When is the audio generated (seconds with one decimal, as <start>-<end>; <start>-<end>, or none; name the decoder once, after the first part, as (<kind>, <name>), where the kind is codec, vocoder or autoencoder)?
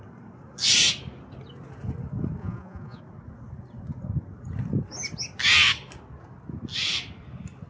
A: 2.4-3.0 (vocoder, Vocos)